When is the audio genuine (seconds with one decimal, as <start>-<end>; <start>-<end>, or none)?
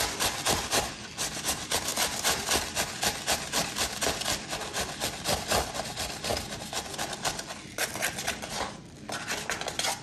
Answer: 0.0-10.0